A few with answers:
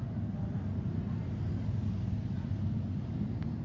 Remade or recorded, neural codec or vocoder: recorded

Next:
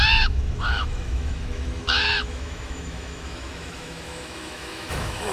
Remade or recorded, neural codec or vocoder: remade, autoencoder, DAC-VAE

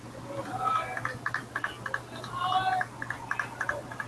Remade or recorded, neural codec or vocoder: recorded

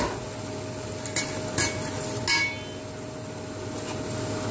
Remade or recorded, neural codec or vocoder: recorded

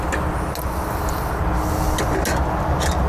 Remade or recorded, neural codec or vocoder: recorded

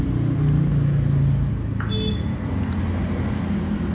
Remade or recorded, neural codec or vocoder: recorded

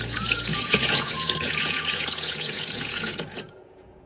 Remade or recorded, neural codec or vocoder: remade, vocoder, Vocos